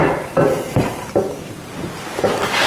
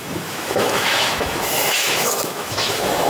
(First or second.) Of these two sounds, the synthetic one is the second